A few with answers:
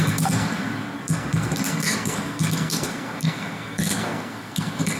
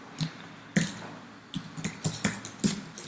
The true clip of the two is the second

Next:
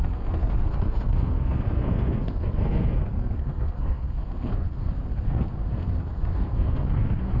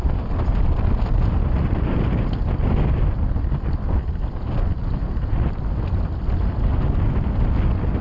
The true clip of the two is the second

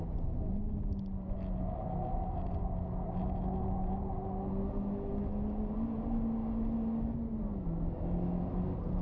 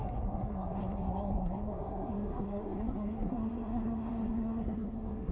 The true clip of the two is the first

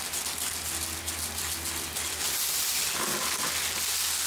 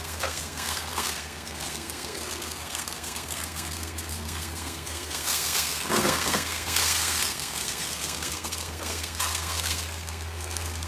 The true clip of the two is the first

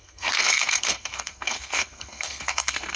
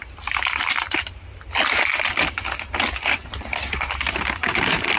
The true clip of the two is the second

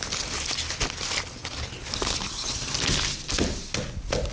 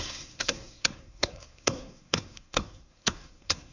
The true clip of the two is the first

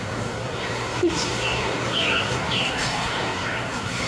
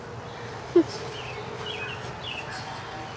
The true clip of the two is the second